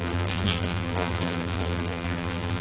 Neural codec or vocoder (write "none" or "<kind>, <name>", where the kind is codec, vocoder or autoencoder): vocoder, BigVGAN v2